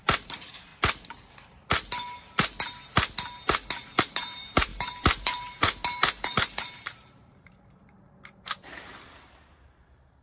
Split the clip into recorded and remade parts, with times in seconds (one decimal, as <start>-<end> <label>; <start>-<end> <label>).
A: 0.0-0.7 remade; 0.7-4.0 recorded; 4.0-10.2 remade